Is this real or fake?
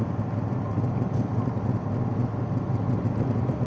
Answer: real